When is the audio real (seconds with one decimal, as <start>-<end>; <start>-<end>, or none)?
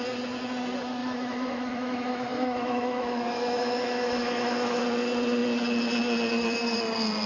0.0-1.0; 4.8-7.3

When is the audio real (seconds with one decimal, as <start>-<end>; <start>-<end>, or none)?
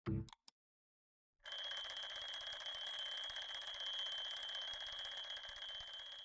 0.0-6.2